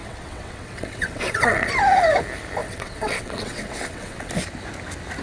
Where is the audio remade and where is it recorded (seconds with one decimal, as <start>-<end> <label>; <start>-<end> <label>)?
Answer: 0.0-1.7 remade; 1.7-2.6 recorded; 2.6-4.3 remade; 4.3-5.2 recorded